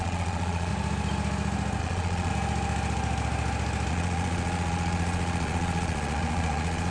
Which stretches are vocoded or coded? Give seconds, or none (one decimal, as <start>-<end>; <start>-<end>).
0.0-0.7; 1.8-2.3; 3.9-6.9